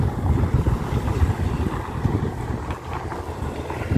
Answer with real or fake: real